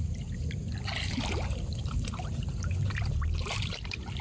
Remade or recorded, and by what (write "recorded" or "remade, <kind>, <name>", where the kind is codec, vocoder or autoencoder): recorded